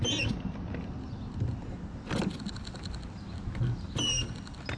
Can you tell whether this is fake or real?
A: real